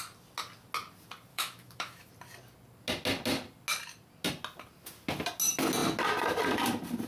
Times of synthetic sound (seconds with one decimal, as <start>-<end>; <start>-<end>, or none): 1.3-2.1